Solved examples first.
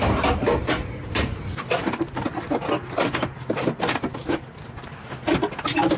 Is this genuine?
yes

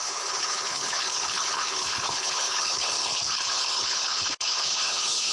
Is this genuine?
no